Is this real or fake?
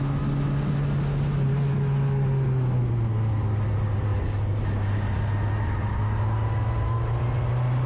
real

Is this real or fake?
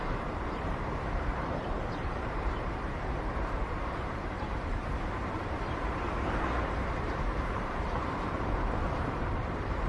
fake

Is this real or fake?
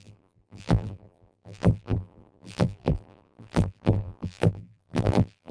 fake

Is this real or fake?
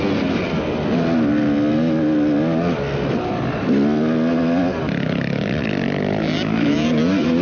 real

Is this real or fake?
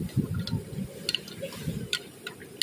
real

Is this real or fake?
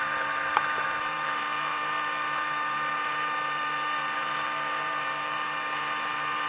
fake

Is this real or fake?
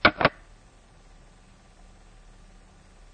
real